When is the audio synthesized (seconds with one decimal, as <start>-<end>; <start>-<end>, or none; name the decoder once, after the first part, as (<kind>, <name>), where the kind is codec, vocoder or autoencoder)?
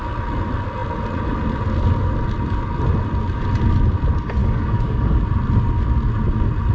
4.4-5.2 (codec, DAC)